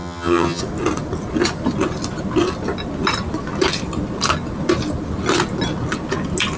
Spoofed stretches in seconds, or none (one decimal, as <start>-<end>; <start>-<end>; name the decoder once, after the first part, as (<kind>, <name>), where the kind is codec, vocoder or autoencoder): 0.0-0.6 (vocoder, HiFi-GAN)